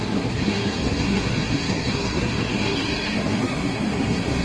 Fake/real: fake